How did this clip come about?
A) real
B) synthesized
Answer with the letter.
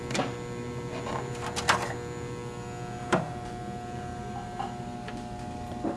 A